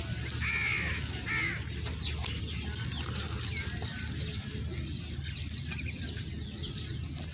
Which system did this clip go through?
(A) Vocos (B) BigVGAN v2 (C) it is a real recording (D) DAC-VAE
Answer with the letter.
C